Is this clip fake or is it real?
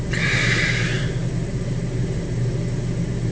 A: real